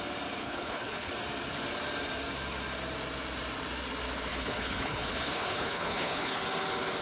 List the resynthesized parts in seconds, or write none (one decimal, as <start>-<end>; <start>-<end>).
0.4-1.1; 4.3-6.4